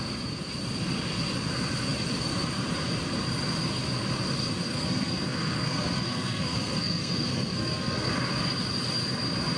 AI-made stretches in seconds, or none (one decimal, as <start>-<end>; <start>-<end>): 4.7-8.1